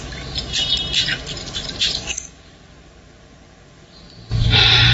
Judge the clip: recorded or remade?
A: recorded